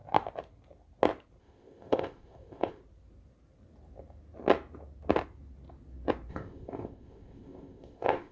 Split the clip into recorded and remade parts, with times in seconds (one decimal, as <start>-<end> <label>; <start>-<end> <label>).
0.0-1.4 recorded; 1.4-2.8 remade; 2.8-6.3 recorded; 6.3-8.3 remade